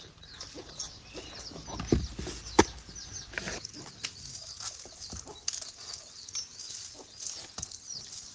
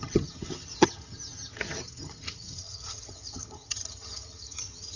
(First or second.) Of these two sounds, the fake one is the second